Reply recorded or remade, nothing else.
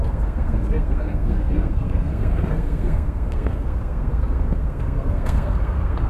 remade